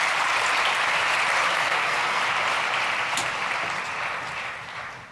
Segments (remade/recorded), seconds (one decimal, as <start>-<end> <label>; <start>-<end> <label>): 0.0-1.6 recorded; 1.6-2.2 remade; 2.2-5.1 recorded